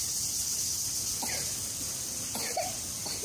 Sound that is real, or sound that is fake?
real